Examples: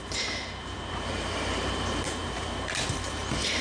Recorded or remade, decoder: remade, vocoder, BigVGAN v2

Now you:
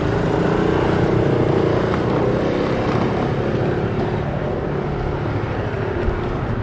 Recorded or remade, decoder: recorded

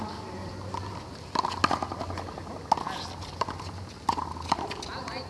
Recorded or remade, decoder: recorded